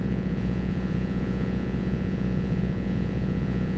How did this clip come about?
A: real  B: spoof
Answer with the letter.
B